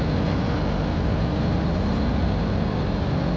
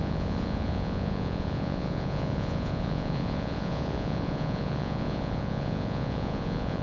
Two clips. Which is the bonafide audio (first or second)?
first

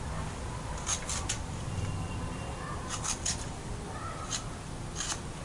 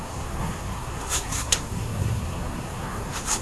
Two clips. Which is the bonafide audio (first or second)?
first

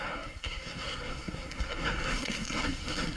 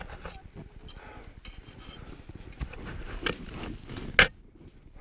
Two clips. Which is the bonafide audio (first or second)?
second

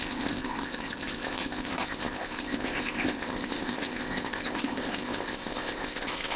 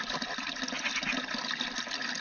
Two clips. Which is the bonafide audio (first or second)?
second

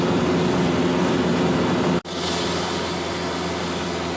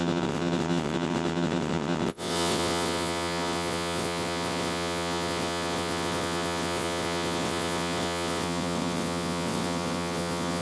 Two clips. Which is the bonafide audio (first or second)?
first